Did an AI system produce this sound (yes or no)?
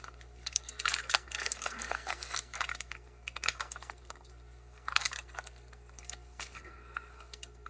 yes